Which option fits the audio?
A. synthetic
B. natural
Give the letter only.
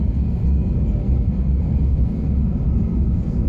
A